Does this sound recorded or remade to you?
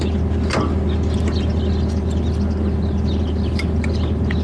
recorded